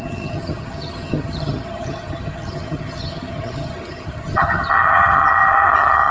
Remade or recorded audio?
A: remade